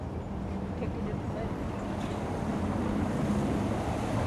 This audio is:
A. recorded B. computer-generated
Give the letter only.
A